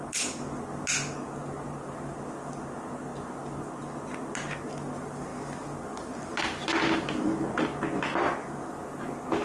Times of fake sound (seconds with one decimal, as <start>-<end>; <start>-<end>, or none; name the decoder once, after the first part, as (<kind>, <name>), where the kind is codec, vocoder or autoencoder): none